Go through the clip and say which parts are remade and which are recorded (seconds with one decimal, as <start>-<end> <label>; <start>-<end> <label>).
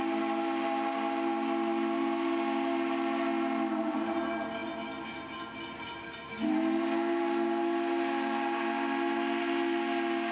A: 0.0-10.3 recorded